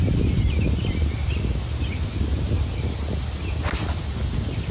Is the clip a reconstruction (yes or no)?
no